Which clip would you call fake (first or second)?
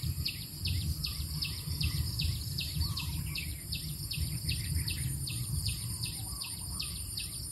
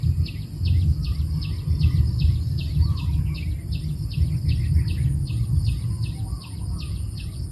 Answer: first